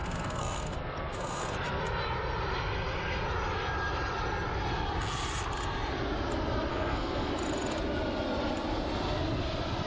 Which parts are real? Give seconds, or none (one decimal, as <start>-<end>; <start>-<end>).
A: 1.8-6.7; 7.3-9.9